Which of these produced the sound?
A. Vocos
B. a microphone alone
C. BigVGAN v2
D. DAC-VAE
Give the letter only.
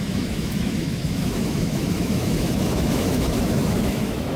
D